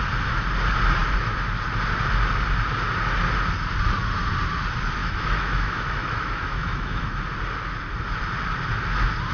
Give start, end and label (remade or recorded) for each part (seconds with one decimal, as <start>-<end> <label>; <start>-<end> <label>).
0.0-5.0 recorded; 5.0-7.2 remade; 7.2-9.3 recorded